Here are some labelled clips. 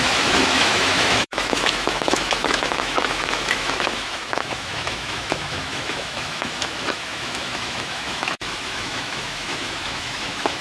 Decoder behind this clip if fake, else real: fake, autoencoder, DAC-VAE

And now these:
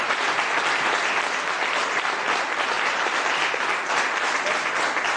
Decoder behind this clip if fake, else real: real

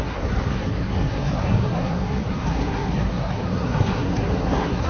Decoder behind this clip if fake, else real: fake, codec, SNAC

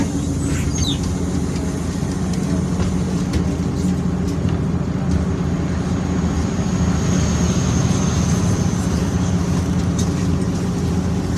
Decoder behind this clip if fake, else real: real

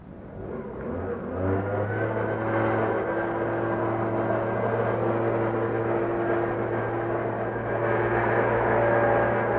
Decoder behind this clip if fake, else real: real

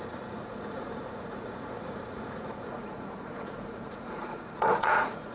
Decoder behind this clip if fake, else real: fake, vocoder, Vocos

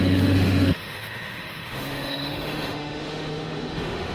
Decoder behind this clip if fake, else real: fake, autoencoder, DAC-VAE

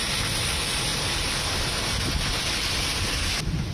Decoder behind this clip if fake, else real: real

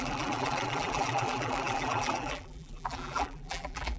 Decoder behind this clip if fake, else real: fake, vocoder, BigVGAN v2